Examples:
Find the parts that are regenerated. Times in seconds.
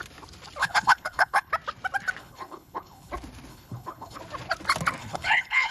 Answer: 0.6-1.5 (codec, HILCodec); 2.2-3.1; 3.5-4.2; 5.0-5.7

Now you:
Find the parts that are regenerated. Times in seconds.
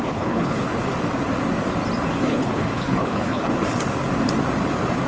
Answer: 0.0-0.7 (codec, HILCodec); 2.2-3.5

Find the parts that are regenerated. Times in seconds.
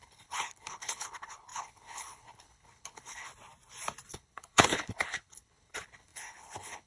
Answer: 0.0-3.3 (codec, HILCodec); 4.1-6.9